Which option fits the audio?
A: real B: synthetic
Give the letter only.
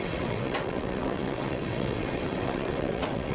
B